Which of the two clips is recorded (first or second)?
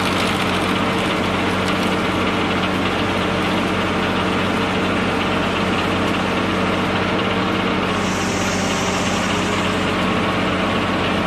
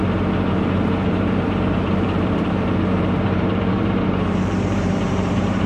first